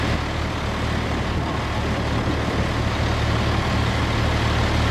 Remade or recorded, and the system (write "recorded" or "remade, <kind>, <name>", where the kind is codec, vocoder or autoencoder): recorded